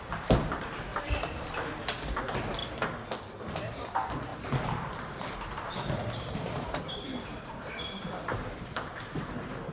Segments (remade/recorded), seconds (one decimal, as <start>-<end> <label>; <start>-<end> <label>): 0.0-0.9 recorded; 0.9-1.7 remade; 1.7-4.3 recorded; 4.3-9.7 remade